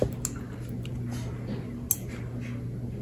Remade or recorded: recorded